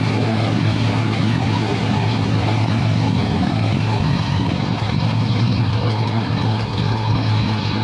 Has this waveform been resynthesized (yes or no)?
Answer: yes